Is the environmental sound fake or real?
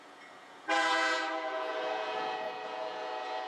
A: fake